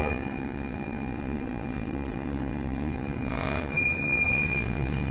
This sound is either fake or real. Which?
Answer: fake